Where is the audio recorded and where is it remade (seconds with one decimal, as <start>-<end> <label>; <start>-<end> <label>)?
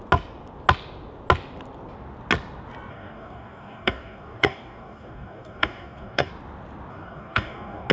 0.0-2.9 recorded; 2.9-6.3 remade; 6.3-6.9 recorded; 6.9-7.9 remade